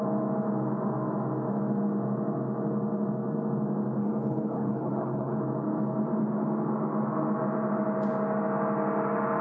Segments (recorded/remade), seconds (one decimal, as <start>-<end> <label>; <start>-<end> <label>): 0.0-4.0 recorded; 4.0-5.4 remade; 5.4-9.4 recorded